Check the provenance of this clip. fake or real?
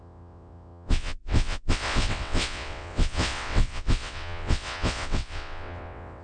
fake